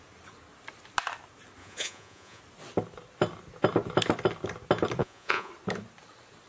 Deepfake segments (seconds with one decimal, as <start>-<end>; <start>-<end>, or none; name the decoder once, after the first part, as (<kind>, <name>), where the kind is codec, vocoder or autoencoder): 1.6-2.4 (vocoder, Vocos); 5.0-5.5